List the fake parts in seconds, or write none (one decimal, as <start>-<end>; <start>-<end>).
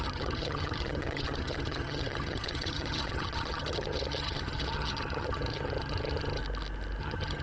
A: 0.0-6.4; 7.0-7.4